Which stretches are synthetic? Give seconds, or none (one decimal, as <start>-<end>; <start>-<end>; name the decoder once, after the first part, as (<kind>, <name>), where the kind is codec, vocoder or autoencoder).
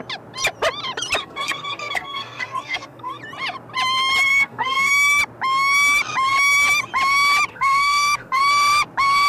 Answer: 1.2-3.2 (codec, SNAC); 4.3-4.9; 7.5-8.4